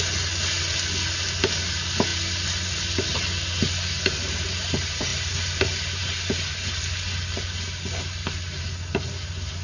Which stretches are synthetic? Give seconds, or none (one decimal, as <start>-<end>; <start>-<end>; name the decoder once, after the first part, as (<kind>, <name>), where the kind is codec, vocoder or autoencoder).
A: none

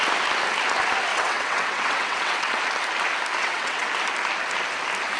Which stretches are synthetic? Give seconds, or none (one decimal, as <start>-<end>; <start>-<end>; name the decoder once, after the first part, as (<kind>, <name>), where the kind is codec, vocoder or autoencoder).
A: 1.1-2.6 (vocoder, WaveNeXt); 3.4-3.9

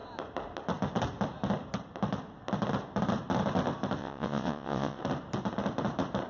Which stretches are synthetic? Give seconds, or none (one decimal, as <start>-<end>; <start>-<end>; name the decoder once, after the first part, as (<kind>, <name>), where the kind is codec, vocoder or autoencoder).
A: 4.0-5.0 (vocoder, WaveNeXt)

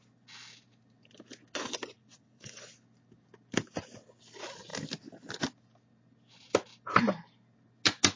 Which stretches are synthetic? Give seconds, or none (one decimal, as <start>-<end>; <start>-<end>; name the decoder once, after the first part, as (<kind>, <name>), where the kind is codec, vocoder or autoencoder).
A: 2.0-2.6 (vocoder, WaveNeXt)

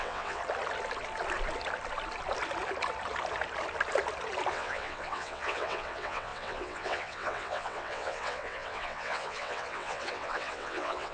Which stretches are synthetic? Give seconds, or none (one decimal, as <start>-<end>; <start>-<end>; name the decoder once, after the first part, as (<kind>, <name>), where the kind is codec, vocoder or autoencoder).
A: 0.0-0.4 (vocoder, WaveNeXt); 4.5-11.1